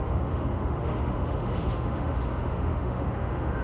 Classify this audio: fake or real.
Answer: fake